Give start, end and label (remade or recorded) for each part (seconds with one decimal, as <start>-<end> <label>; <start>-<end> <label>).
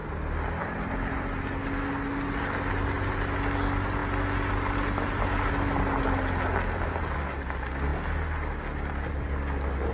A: 0.0-9.9 recorded